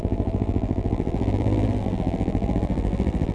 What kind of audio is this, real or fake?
fake